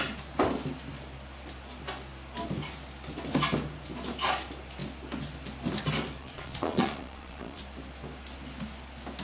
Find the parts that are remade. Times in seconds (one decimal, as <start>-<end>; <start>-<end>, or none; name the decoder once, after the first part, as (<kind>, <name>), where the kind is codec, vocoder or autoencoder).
6.2-7.6 (vocoder, Vocos)